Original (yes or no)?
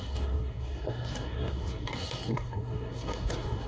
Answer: no